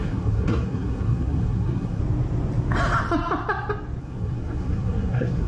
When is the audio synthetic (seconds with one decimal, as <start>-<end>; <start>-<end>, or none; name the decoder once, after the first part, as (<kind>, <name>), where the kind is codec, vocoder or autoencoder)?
0.0-2.0 (codec, SNAC); 4.0-5.5